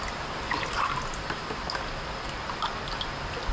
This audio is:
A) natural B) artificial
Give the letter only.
A